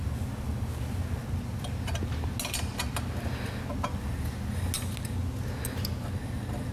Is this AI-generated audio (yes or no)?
no